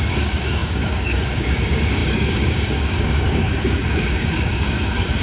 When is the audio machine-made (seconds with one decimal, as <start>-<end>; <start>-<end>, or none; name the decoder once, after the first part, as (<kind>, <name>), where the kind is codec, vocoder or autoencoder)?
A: 0.0-5.2 (codec, DAC)